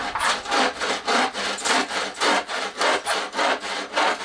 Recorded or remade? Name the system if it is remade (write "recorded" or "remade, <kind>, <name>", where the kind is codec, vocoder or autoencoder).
recorded